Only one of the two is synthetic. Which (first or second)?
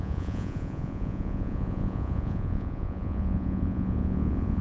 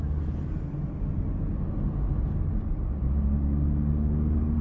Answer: first